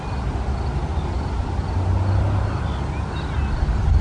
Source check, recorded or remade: recorded